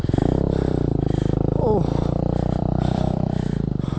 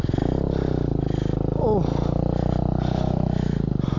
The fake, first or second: first